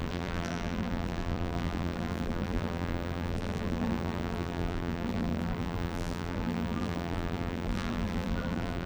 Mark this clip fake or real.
fake